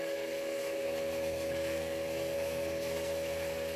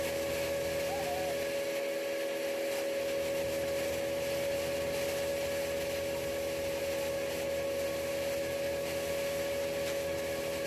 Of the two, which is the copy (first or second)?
first